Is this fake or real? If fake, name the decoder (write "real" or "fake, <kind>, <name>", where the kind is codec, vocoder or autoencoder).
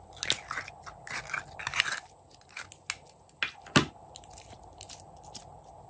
real